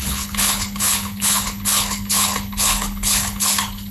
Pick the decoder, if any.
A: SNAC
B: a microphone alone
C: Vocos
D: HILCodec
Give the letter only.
D